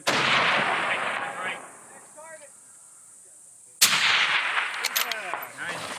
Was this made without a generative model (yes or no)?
yes